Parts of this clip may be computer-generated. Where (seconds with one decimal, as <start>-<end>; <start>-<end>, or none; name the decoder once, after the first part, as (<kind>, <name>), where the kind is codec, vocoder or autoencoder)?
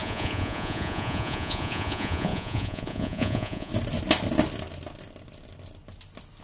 0.0-3.7 (vocoder, Vocos)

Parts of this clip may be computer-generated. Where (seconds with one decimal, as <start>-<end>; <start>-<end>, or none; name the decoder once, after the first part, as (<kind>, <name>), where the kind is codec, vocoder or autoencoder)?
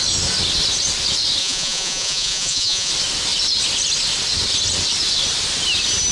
1.4-2.9 (vocoder, Vocos)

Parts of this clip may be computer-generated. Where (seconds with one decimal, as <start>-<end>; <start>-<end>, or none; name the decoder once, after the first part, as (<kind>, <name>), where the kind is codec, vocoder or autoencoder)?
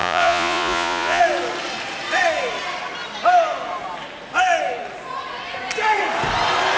0.0-1.2 (vocoder, Vocos)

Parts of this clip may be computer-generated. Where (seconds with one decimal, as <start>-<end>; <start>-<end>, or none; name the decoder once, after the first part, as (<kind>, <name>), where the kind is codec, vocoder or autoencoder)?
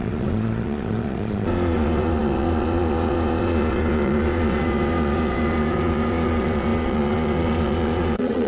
0.0-8.5 (vocoder, Vocos)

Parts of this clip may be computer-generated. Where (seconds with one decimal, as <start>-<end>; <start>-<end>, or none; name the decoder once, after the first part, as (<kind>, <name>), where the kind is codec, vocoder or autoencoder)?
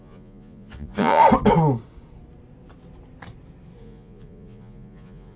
0.0-1.2 (vocoder, Vocos); 3.8-5.4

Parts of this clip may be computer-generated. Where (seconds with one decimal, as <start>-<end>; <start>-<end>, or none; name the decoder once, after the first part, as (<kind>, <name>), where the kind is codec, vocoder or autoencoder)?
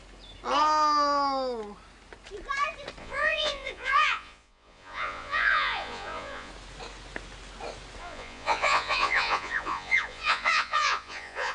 3.0-6.5 (vocoder, Vocos); 8.0-11.5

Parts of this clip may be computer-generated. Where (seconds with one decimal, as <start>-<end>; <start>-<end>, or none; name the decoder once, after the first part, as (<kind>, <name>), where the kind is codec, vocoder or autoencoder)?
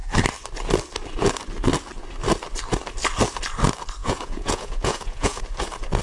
4.0-5.4 (vocoder, Vocos)